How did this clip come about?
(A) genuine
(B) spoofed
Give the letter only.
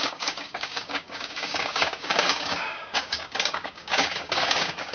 B